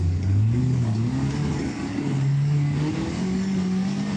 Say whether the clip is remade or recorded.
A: remade